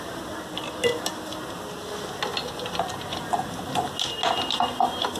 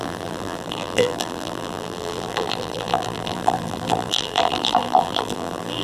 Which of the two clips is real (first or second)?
first